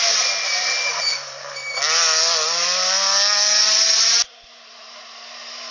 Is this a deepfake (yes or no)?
no